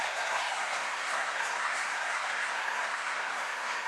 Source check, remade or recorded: remade